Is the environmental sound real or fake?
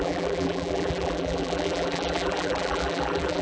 fake